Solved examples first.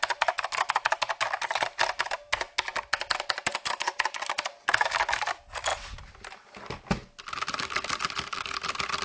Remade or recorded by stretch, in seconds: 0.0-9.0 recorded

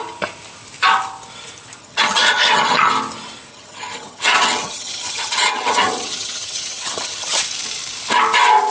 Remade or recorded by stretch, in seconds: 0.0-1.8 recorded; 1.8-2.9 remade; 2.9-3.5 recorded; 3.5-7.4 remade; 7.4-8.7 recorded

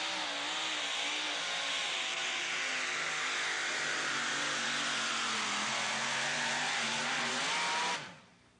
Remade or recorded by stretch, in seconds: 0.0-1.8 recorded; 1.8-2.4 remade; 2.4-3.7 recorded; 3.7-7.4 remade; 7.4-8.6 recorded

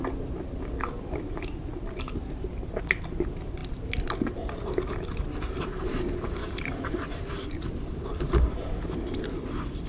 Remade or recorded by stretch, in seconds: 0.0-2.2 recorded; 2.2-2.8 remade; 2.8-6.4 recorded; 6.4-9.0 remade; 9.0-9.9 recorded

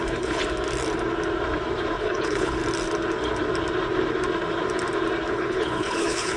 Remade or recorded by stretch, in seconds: 0.0-0.4 remade; 0.4-2.0 recorded; 2.0-2.6 remade; 2.6-5.3 recorded; 5.3-6.4 remade